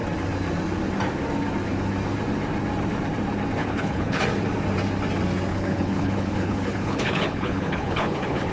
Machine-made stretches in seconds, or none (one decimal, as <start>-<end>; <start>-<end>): 3.6-4.2; 5.5-8.5